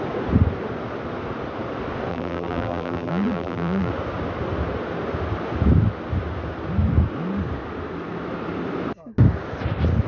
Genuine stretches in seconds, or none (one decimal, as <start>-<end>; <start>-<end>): 0.0-2.1; 3.9-10.1